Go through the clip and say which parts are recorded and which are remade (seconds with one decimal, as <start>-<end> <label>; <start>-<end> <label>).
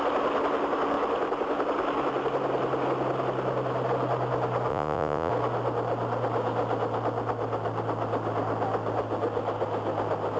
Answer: 0.0-4.7 recorded; 4.7-5.3 remade; 5.3-10.4 recorded